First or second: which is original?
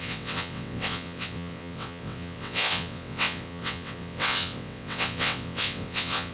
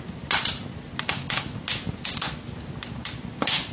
second